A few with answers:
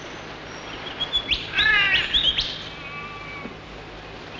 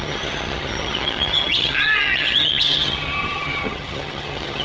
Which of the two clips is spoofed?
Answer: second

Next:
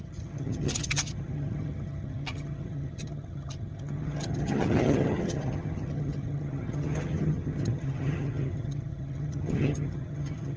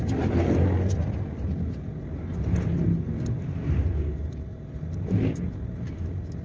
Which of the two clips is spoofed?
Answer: first